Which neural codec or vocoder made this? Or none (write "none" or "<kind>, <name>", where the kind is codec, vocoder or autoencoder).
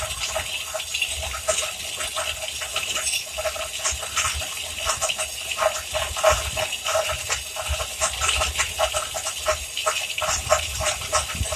none